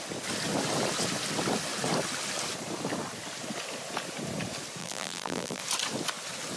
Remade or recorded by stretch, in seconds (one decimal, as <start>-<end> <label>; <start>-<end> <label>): 0.0-4.8 recorded; 4.8-5.6 remade; 5.6-6.6 recorded